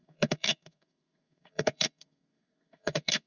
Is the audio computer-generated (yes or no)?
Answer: yes